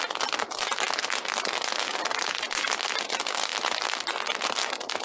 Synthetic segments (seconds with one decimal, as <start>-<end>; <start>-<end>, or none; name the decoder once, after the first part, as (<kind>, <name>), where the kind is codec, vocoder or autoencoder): none